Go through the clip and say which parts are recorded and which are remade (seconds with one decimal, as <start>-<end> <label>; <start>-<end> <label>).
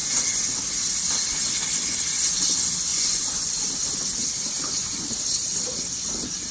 0.0-2.9 recorded; 2.9-3.5 remade; 3.5-6.5 recorded